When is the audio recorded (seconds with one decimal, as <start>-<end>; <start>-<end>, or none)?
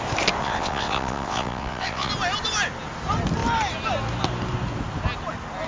0.0-0.4; 2.1-5.7